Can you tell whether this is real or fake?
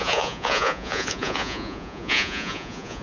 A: fake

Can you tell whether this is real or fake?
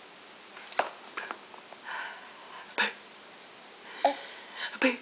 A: real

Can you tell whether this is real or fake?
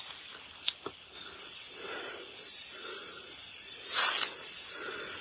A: real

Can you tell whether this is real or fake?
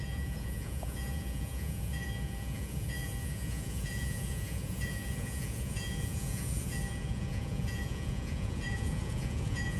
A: fake